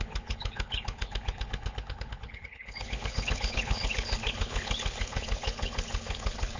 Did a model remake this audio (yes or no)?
yes